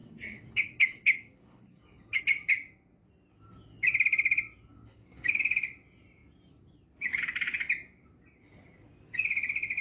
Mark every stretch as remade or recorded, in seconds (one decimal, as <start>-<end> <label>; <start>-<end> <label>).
0.0-2.2 remade; 2.2-4.7 recorded; 4.7-5.4 remade; 5.4-9.8 recorded